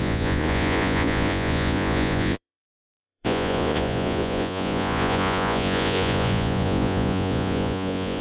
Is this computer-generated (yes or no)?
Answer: yes